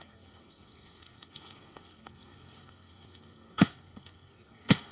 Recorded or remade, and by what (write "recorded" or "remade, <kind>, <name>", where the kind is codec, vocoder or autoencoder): remade, codec, SNAC